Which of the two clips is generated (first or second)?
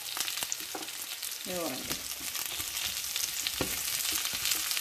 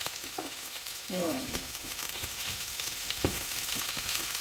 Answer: second